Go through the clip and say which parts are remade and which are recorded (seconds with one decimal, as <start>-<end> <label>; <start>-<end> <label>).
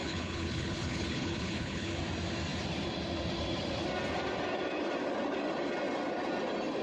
0.0-2.0 remade; 2.0-6.8 recorded